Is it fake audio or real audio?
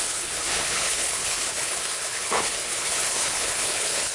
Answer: fake